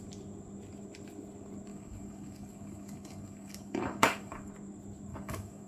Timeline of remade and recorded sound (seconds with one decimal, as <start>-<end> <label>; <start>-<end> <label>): 0.0-1.7 recorded; 1.7-4.5 remade; 4.5-5.1 recorded; 5.1-5.7 remade